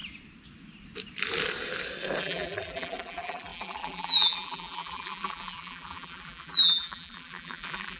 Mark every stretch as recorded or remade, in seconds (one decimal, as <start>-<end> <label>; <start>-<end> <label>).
0.0-2.2 recorded; 2.2-8.0 remade